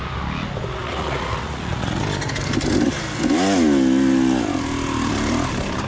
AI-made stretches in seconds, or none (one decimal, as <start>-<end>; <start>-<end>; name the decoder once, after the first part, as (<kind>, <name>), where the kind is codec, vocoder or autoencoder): 0.8-2.0 (vocoder, Vocos)